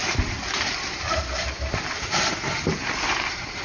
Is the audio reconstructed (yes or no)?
yes